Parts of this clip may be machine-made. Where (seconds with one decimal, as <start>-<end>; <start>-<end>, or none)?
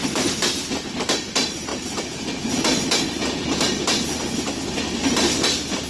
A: 0.0-0.9; 3.2-5.9